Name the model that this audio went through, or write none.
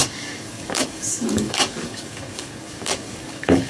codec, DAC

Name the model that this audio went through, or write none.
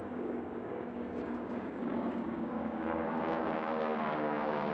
codec, DAC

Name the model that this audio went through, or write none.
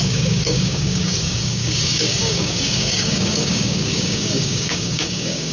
codec, DAC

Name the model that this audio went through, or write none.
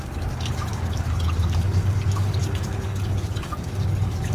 codec, DAC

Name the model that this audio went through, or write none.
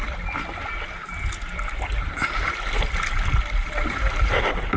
none